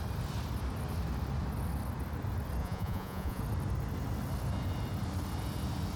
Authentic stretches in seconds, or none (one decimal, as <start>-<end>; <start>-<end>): 0.0-2.6; 3.4-6.0